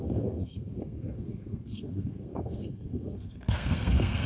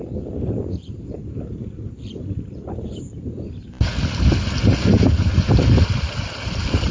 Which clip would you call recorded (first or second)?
second